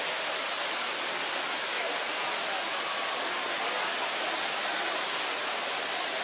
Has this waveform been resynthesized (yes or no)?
no